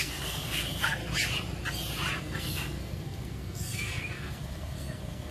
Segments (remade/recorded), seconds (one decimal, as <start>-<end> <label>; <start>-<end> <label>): 0.0-1.0 remade; 1.0-2.2 recorded; 2.2-5.3 remade